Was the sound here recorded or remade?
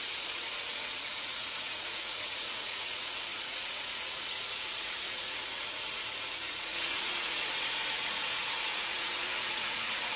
remade